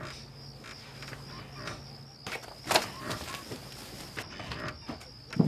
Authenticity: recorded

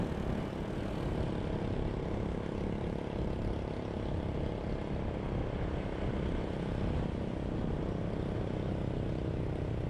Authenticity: recorded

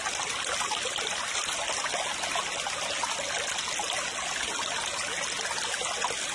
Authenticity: recorded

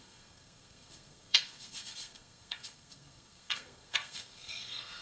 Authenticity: remade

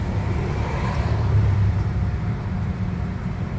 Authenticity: remade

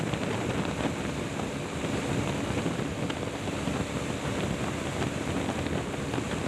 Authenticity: recorded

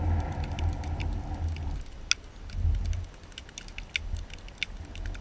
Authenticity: recorded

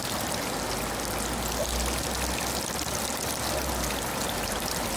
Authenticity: recorded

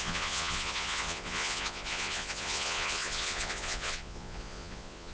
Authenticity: remade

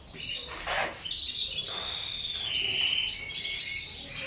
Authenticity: recorded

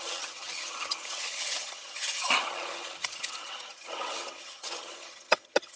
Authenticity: remade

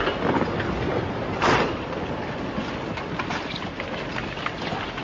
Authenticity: recorded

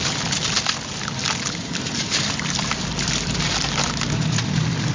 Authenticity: remade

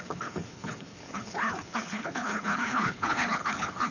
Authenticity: remade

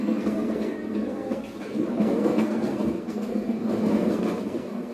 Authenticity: remade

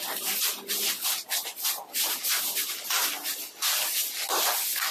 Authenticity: recorded